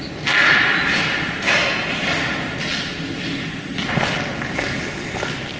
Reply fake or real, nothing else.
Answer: real